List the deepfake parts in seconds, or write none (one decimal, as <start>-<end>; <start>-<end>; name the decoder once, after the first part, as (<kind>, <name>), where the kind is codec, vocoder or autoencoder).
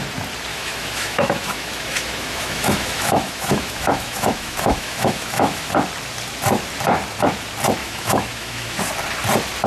0.5-5.7 (autoencoder, DAC-VAE); 7.8-8.8